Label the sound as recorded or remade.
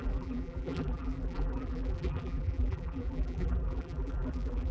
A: remade